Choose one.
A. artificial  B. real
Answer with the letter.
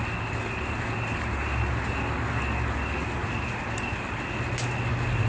B